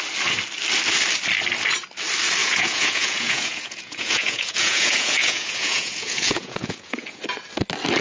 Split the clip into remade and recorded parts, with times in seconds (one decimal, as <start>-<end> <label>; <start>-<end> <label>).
0.0-2.4 recorded; 2.4-7.2 remade; 7.2-8.0 recorded